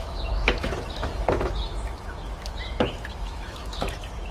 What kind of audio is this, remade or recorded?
remade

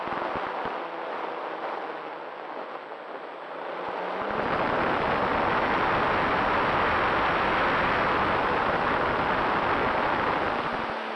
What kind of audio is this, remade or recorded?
recorded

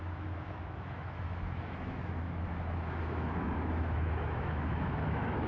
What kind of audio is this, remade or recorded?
remade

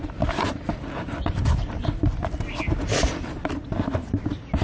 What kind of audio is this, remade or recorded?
recorded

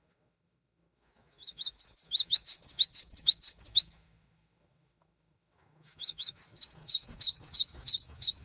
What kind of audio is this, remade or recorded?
remade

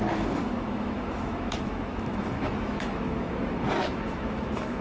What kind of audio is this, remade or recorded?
remade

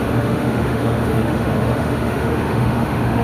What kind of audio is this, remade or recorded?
remade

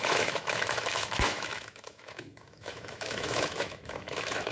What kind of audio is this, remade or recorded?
remade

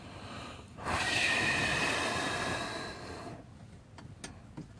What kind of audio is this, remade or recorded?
recorded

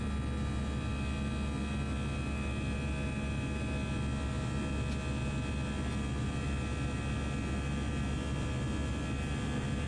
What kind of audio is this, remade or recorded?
recorded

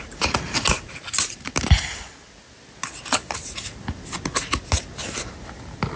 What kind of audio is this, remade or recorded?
recorded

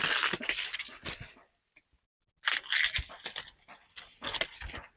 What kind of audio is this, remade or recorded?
recorded